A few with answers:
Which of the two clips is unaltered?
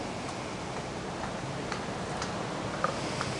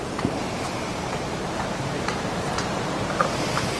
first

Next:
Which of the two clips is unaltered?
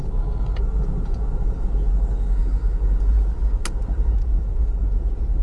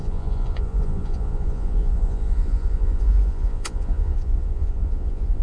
first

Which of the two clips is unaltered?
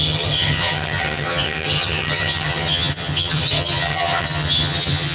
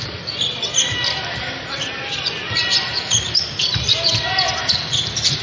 second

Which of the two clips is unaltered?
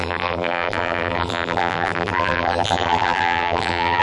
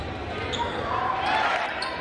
second